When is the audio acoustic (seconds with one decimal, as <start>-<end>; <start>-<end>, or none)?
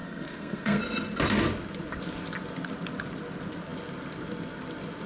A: 0.8-5.1